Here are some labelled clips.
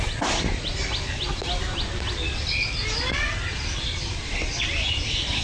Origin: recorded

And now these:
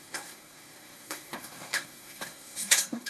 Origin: remade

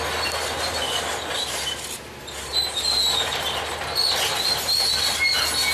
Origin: recorded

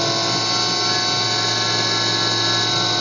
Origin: recorded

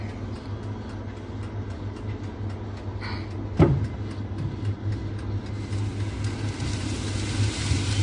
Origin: recorded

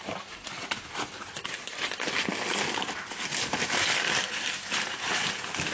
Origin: recorded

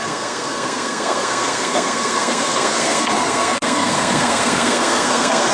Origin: remade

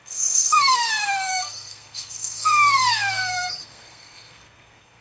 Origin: remade